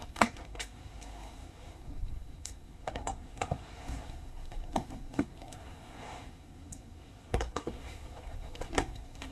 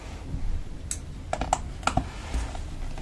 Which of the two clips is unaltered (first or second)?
second